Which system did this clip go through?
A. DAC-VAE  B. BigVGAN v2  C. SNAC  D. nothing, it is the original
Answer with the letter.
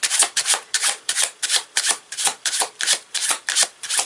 B